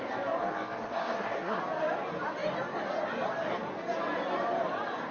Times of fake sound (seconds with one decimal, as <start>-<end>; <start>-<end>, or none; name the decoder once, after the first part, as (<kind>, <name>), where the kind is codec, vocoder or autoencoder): 0.4-1.6 (codec, SNAC)